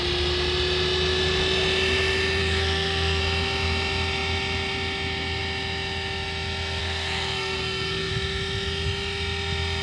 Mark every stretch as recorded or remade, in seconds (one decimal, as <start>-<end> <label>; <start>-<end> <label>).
0.0-2.4 recorded; 2.4-3.2 remade; 3.2-6.8 recorded; 6.8-8.1 remade; 8.1-9.8 recorded